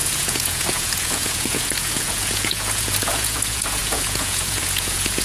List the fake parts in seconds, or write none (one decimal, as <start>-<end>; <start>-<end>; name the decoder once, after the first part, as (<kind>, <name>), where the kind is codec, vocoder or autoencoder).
0.0-5.2 (vocoder, Vocos)